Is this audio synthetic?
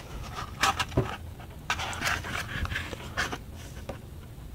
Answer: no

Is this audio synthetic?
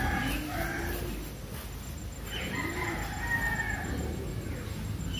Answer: no